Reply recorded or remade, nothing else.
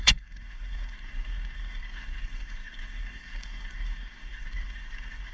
remade